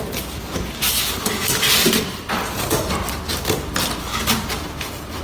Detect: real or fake real